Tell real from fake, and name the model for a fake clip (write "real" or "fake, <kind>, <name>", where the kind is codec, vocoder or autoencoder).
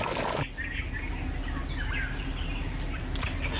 real